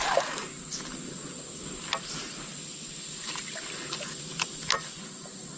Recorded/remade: recorded